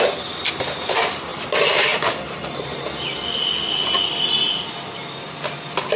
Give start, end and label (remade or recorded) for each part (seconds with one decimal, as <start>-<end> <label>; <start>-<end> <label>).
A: 0.0-6.0 recorded